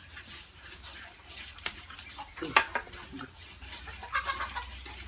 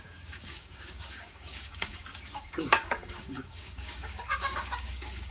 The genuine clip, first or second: first